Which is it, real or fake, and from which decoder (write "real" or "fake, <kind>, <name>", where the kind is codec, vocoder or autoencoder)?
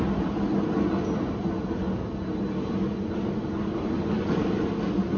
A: real